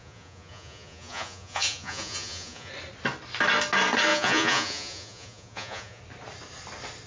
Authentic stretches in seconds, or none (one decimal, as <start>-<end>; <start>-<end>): 2.7-4.1; 6.0-7.1